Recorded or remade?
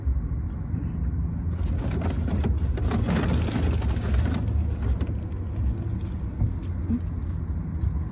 recorded